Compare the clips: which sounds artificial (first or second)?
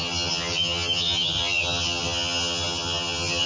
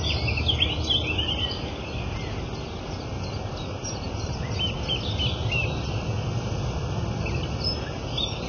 first